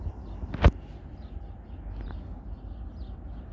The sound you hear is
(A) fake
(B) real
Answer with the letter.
B